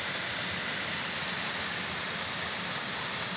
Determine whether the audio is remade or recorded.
recorded